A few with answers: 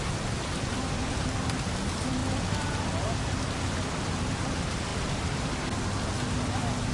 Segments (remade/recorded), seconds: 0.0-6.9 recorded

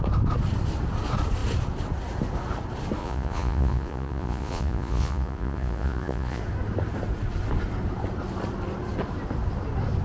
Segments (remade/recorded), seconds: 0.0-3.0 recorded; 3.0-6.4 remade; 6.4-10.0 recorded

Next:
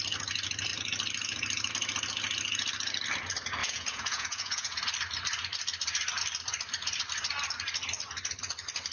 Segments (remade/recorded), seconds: 0.0-3.6 recorded; 3.6-4.8 remade; 4.8-8.9 recorded

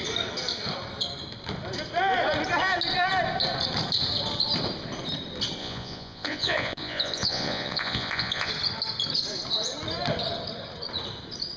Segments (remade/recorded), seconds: 0.0-5.6 recorded; 5.6-8.5 remade; 8.5-11.6 recorded

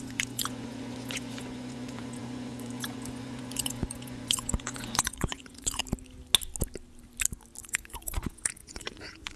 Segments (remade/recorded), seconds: 0.0-5.8 remade; 5.8-7.6 recorded; 7.6-9.4 remade